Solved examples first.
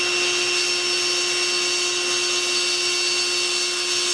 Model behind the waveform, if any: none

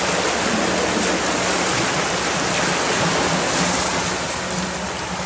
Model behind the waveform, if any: none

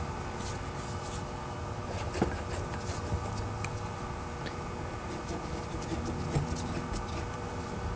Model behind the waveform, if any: none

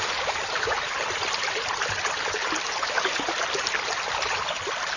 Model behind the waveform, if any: none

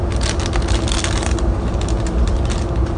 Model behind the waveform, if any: none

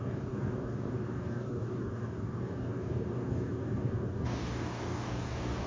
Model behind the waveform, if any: codec, DAC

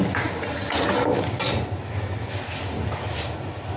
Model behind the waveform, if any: none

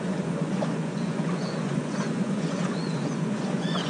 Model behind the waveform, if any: vocoder, Vocos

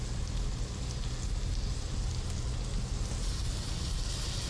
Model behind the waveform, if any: none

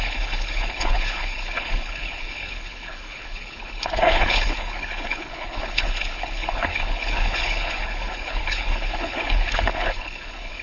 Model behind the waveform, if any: codec, HILCodec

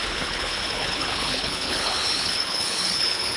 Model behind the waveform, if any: codec, HILCodec